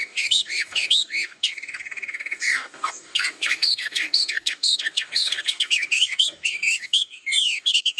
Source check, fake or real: fake